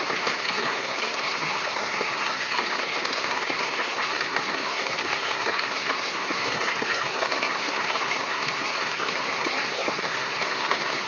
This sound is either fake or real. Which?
fake